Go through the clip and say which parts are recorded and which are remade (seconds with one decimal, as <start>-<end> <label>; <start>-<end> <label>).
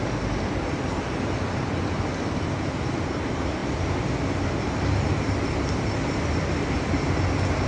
0.0-7.7 recorded